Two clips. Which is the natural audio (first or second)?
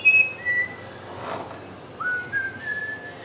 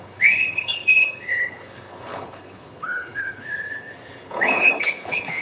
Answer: first